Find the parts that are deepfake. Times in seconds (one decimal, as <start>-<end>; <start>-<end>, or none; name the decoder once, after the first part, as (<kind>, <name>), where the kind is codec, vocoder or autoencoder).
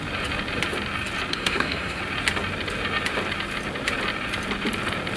1.3-2.0 (codec, SNAC)